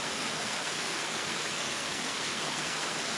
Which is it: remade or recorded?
remade